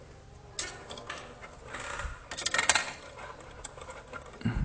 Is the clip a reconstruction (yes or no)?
no